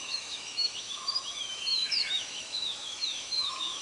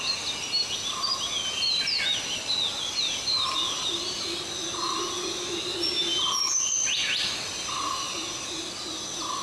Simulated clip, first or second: first